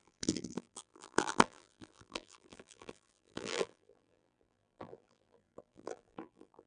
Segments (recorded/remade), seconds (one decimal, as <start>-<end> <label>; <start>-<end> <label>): 0.0-6.7 remade